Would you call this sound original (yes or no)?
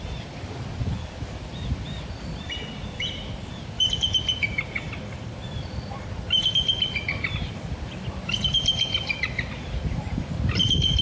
no